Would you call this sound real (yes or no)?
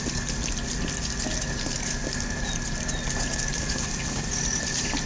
yes